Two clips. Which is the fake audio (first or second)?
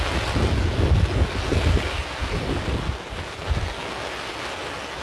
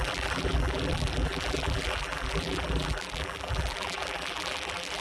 second